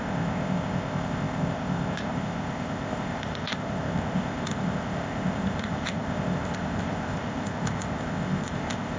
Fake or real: fake